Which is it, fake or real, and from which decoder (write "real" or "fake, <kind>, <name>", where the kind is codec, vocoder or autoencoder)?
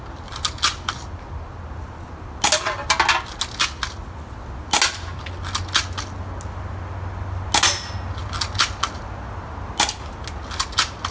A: real